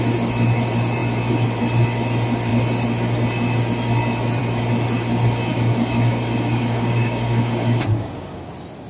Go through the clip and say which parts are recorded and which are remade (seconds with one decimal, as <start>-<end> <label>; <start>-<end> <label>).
0.0-5.5 recorded; 5.5-8.5 remade; 8.5-8.9 recorded